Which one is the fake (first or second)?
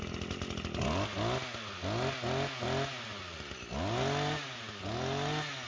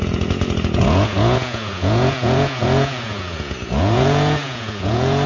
second